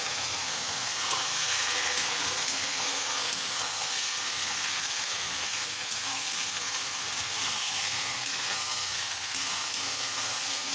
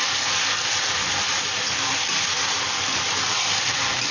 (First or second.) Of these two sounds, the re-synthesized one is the first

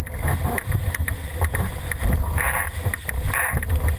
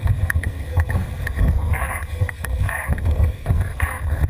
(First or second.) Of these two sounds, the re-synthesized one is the second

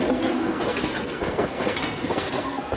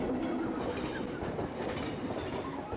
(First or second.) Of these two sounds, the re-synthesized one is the first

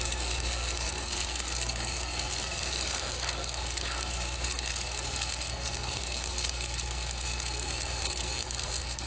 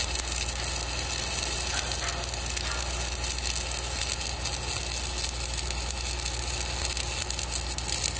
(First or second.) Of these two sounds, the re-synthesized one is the first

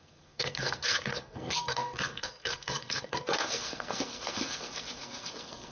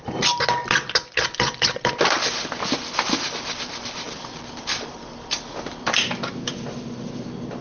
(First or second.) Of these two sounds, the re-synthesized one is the first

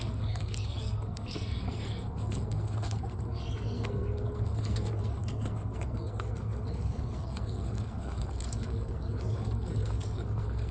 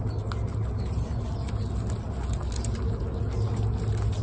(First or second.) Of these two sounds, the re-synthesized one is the first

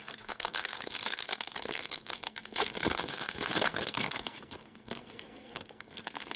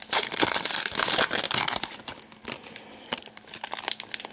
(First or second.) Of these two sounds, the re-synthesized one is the first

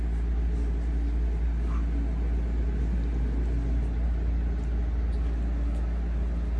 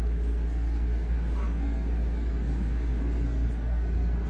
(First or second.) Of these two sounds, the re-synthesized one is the second